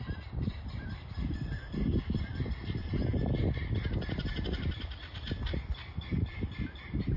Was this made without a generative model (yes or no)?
no